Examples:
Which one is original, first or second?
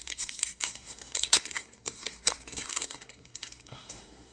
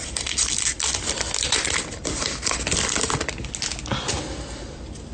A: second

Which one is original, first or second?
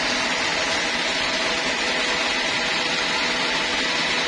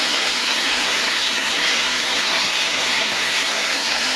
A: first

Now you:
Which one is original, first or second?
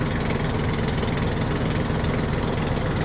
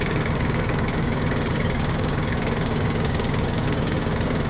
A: first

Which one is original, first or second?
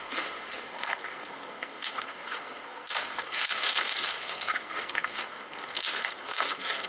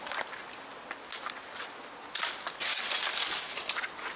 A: second